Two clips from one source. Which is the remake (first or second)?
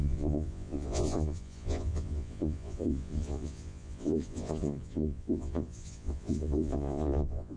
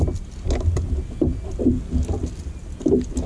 first